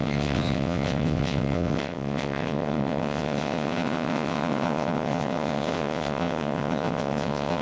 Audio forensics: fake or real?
fake